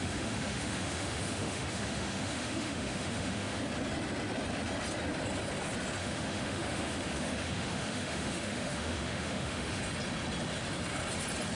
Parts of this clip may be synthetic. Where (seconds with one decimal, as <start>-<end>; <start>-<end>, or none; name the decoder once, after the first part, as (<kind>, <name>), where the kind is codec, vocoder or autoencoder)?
0.0-3.6 (autoencoder, DAC-VAE); 6.0-9.8